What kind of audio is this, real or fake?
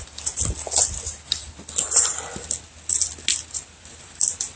real